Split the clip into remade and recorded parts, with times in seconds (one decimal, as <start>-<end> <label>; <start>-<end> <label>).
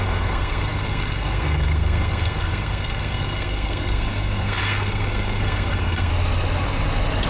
0.0-6.1 remade; 6.1-7.3 recorded